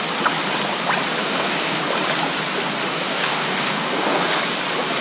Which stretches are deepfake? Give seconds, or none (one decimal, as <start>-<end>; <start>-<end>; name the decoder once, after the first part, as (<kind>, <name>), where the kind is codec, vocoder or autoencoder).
1.2-1.8 (codec, DAC); 3.0-4.4